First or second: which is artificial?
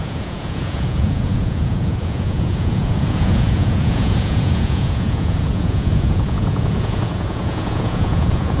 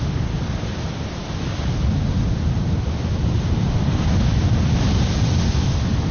first